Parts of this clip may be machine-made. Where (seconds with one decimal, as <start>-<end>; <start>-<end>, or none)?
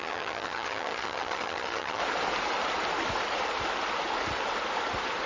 0.0-2.0